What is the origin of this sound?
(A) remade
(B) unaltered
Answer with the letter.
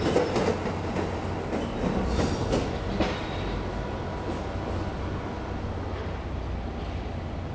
B